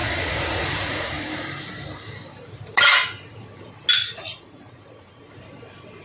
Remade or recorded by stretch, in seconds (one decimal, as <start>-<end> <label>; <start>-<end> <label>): 0.0-1.1 remade; 1.1-4.0 recorded; 4.0-5.3 remade; 5.3-6.0 recorded